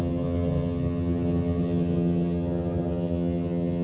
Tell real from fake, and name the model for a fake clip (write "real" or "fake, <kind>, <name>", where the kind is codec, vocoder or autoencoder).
fake, vocoder, HiFi-GAN